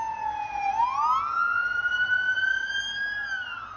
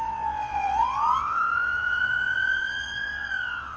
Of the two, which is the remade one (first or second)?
second